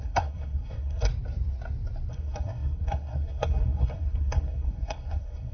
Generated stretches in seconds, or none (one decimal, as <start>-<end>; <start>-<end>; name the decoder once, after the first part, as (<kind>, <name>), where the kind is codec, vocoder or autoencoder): 0.0-1.1 (codec, SNAC); 2.1-5.5